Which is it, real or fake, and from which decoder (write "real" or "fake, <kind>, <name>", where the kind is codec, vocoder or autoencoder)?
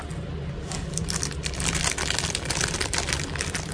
real